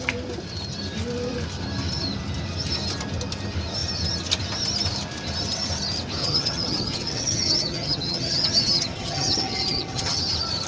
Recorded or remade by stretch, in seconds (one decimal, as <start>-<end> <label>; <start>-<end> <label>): 0.0-6.2 recorded; 6.2-10.2 remade; 10.2-10.7 recorded